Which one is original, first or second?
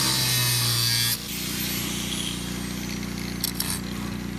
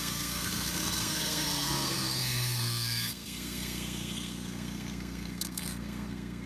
first